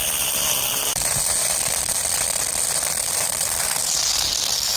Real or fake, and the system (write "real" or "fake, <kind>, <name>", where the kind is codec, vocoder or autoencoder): real